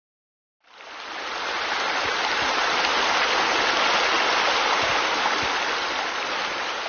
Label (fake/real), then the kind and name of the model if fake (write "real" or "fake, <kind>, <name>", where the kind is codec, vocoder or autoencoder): real